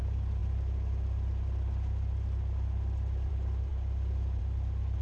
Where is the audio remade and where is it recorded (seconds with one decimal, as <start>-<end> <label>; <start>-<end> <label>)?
0.0-5.0 recorded